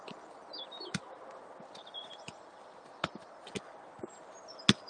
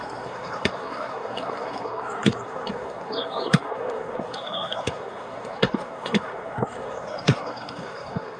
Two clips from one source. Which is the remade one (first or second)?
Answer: second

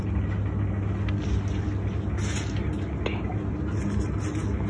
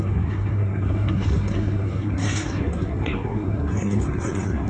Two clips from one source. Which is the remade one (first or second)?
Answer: second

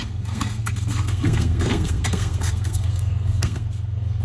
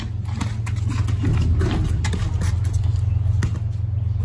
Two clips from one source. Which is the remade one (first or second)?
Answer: first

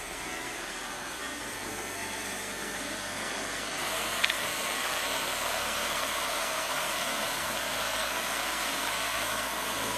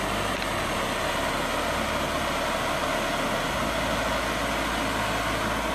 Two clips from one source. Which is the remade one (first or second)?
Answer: first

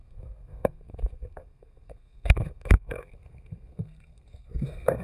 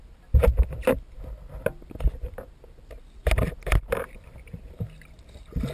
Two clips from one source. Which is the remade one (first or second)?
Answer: first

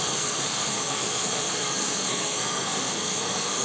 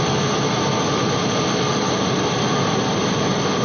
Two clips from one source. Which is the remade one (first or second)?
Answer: first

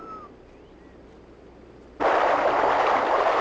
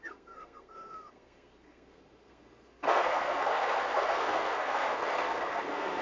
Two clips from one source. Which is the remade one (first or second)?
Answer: second